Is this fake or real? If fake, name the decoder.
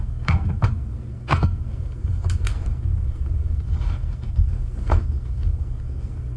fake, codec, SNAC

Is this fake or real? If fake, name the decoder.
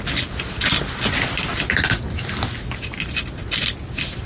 real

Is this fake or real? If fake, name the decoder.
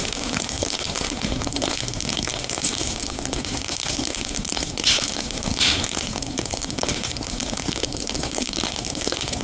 fake, codec, SNAC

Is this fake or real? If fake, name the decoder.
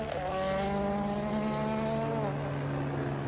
real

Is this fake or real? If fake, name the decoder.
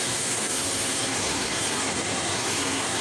fake, codec, SNAC